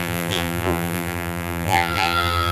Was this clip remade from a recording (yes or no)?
yes